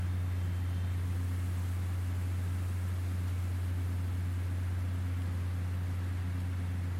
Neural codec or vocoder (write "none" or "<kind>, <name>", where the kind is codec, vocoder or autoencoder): none